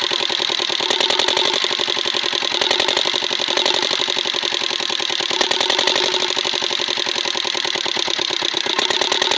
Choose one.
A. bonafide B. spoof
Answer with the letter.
A